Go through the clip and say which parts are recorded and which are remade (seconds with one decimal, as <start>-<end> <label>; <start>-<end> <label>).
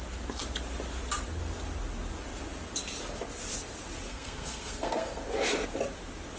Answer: 0.0-4.1 recorded; 4.1-5.2 remade; 5.2-6.4 recorded